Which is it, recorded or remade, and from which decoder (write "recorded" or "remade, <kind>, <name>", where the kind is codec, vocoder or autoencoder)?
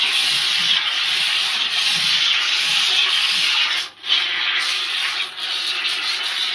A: recorded